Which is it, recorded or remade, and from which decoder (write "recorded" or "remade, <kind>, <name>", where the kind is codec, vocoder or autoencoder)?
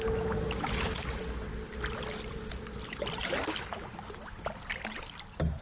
recorded